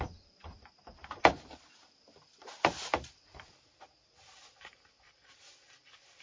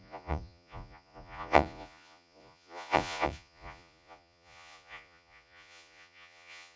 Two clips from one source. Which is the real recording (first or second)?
first